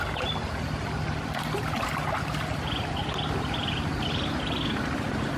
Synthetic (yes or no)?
no